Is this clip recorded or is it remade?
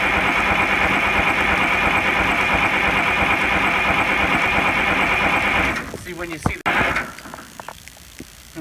recorded